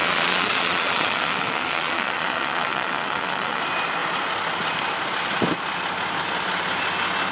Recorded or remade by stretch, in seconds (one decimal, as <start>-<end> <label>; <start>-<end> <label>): 0.0-3.6 remade; 3.6-7.3 recorded